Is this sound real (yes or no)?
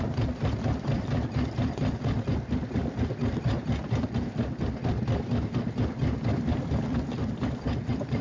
yes